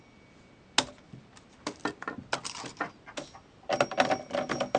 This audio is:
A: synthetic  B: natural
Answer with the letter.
B